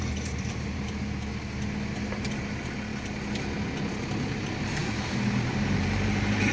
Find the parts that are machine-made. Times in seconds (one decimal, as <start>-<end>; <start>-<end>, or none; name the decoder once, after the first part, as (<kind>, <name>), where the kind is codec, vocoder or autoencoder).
0.0-1.3 (vocoder, BigVGAN v2); 2.1-2.9; 4.3-6.5